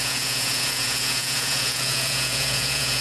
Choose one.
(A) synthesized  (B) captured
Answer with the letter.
A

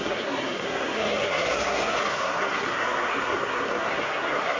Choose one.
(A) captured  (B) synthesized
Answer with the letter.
B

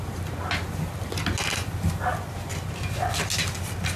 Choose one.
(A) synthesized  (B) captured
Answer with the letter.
B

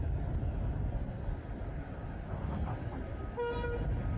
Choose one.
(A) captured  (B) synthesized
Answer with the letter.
A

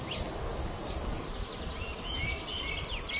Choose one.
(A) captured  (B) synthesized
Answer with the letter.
A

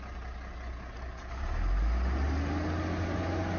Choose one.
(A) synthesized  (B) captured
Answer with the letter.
B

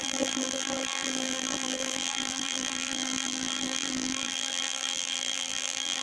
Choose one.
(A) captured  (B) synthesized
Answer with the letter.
B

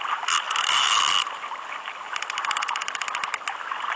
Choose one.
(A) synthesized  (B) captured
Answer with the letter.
B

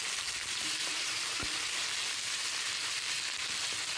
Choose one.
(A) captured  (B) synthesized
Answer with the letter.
B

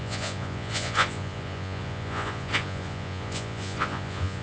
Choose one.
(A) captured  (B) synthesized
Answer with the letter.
B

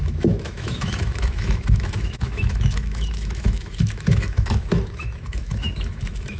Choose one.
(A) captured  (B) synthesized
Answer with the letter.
B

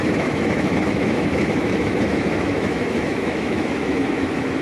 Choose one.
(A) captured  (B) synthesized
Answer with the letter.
B